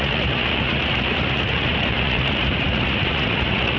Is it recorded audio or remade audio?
remade